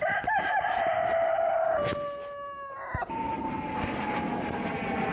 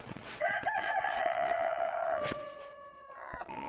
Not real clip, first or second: second